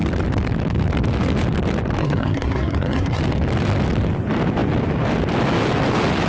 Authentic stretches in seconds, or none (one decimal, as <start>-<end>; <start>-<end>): 0.0-2.0; 3.2-6.3